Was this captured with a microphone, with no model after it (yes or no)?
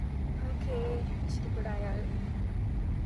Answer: yes